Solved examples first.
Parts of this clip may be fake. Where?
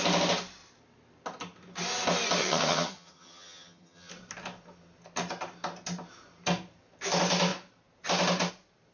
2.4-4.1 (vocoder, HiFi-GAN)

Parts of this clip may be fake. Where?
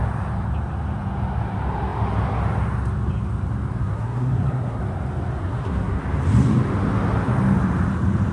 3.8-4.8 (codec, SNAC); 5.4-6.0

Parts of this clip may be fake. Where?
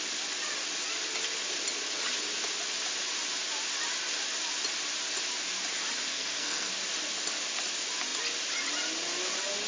6.1-6.7 (codec, SNAC)